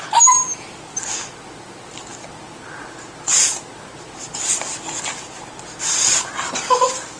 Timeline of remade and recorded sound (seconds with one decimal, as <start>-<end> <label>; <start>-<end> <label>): 0.0-7.2 recorded